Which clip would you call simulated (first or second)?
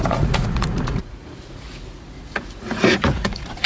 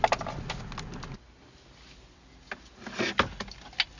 first